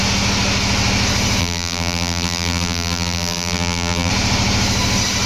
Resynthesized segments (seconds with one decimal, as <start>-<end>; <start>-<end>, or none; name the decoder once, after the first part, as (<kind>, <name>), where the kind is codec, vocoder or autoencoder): 1.4-4.1 (vocoder, BigVGAN v2)